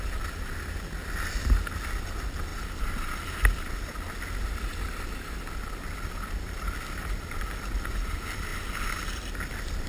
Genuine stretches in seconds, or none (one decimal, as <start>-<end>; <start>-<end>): 0.0-9.9